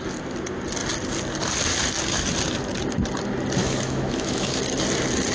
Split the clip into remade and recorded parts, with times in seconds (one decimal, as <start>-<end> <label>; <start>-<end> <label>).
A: 0.0-3.6 recorded; 3.6-4.6 remade; 4.6-5.3 recorded